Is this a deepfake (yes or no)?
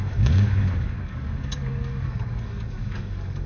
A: yes